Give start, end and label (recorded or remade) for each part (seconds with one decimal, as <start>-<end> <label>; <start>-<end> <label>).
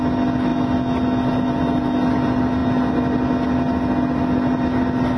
0.0-5.2 recorded